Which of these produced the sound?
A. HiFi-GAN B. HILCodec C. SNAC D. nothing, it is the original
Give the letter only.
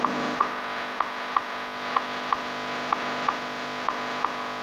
D